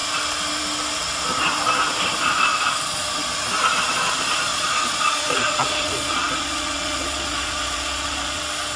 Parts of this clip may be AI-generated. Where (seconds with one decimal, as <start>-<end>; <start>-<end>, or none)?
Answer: 2.5-3.1; 4.5-8.4